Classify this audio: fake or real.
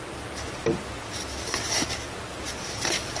real